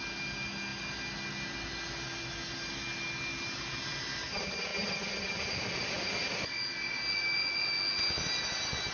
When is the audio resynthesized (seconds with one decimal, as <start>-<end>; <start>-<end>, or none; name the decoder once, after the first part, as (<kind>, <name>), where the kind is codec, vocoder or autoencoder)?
none